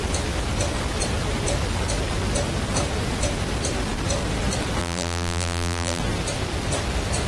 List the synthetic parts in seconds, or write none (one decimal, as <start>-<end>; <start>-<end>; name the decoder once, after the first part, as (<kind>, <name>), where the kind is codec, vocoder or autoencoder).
4.8-6.0 (vocoder, BigVGAN v2)